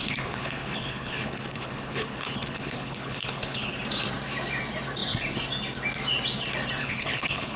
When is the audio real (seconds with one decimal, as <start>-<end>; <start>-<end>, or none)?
3.7-6.8